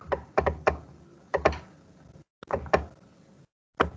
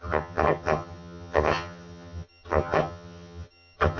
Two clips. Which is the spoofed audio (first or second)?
second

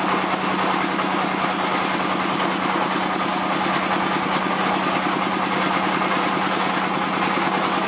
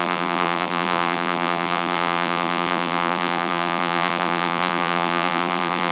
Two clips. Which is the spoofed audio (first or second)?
second